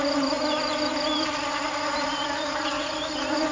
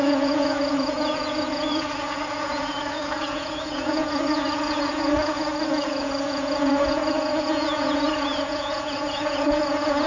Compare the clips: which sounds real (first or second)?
first